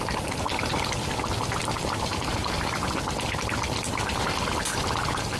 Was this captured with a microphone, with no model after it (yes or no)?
yes